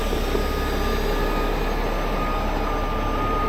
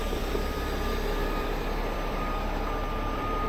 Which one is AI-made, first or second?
second